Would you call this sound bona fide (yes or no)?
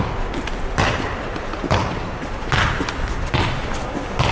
yes